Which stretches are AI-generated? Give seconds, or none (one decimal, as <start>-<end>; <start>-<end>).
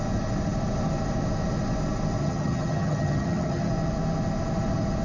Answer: 2.2-3.7